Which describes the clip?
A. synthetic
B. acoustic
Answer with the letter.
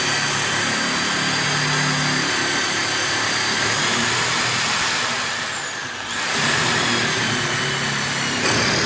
B